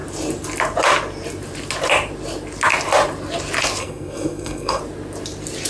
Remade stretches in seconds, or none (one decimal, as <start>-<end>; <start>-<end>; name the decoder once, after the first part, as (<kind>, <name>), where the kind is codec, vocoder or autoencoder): 3.8-4.8 (codec, SNAC)